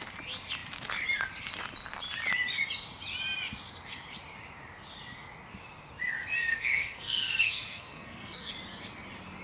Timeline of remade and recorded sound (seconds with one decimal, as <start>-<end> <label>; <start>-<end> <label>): 0.0-6.5 recorded; 6.5-8.5 remade; 8.5-9.4 recorded